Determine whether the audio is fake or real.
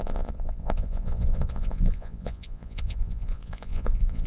fake